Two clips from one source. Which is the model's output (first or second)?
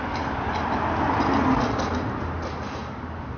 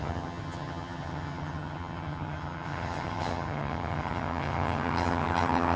second